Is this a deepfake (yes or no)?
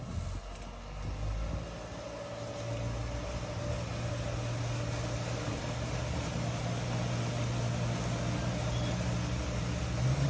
no